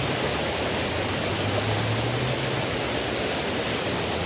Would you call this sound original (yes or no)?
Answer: yes